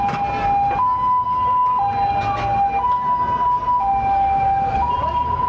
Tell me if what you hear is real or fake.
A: real